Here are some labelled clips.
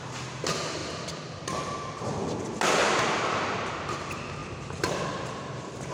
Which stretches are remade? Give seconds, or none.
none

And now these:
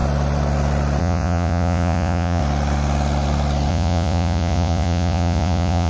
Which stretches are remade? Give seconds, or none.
1.0-2.4; 3.7-5.9

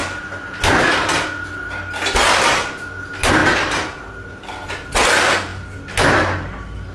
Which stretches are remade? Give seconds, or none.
none